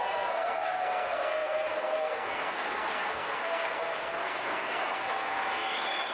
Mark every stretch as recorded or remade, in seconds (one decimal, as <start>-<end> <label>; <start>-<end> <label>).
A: 0.0-6.1 remade